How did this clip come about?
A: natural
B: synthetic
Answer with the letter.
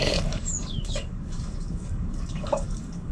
B